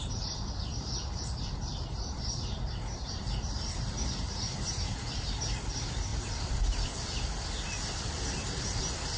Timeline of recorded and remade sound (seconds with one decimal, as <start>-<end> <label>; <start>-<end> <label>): 0.0-1.7 recorded; 1.7-5.0 remade; 5.0-9.2 recorded